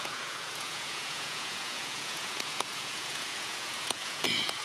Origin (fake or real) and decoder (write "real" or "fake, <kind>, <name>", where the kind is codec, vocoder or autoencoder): fake, vocoder, Vocos